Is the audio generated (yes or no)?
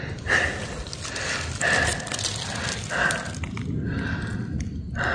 no